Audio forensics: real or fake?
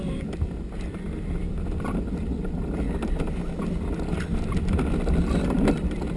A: real